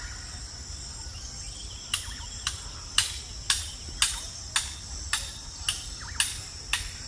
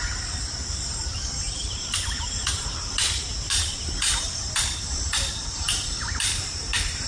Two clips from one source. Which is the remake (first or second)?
second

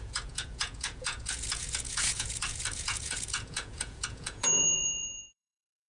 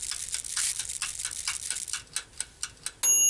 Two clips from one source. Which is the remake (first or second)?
first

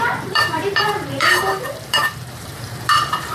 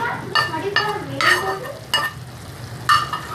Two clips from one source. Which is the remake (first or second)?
first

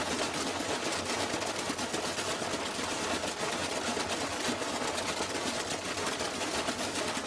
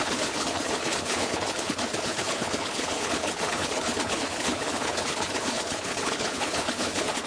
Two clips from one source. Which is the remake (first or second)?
second